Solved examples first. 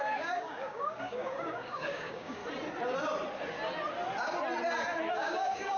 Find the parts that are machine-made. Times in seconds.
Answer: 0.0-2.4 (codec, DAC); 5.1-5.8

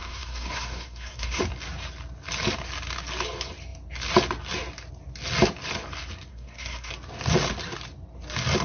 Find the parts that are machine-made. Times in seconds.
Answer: 0.0-1.4 (codec, SNAC); 6.3-6.9

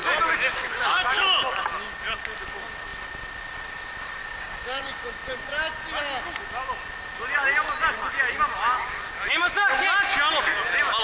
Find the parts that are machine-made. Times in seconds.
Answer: 4.2-4.8 (codec, DAC)

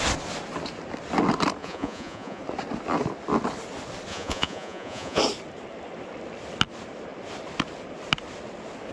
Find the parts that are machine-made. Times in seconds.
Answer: 1.6-2.4 (vocoder, Vocos); 4.1-5.2

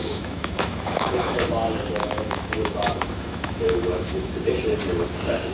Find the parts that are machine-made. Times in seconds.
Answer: 0.0-1.5 (autoencoder, DAC-VAE); 2.0-4.3

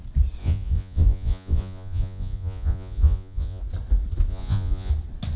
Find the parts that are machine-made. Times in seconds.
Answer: 0.4-3.6 (vocoder, Vocos); 4.3-4.9

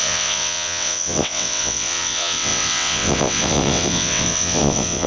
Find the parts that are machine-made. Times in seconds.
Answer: 0.0-5.1 (vocoder, WaveNeXt)

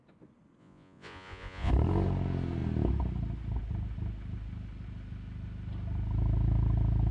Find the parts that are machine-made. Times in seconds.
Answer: 0.6-1.7 (vocoder, Vocos)